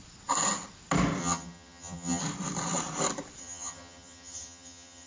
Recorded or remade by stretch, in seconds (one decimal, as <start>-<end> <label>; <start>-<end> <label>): 0.0-1.2 recorded; 1.2-2.2 remade; 2.2-3.4 recorded; 3.4-5.1 remade